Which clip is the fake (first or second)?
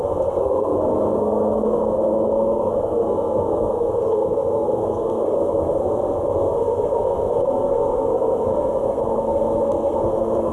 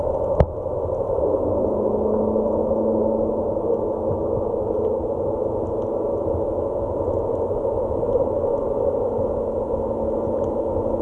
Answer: first